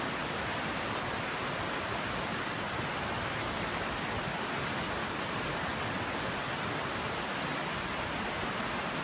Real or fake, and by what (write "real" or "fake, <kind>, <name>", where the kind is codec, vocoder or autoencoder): real